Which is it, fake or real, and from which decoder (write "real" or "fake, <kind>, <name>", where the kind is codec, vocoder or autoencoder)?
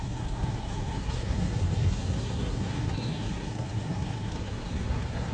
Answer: fake, codec, SNAC